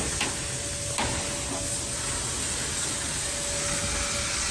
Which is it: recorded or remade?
recorded